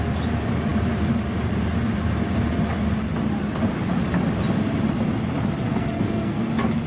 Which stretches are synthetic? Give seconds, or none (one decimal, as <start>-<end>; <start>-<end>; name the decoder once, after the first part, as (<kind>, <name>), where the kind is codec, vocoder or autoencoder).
5.7-6.5 (codec, SNAC)